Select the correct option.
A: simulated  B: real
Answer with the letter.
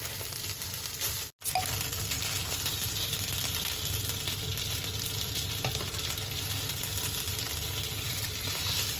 B